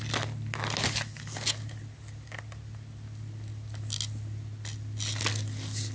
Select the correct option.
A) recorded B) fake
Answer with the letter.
A